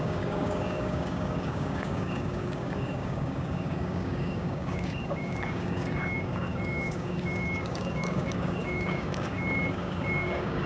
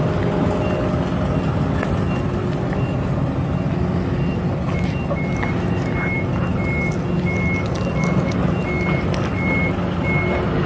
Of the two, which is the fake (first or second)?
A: first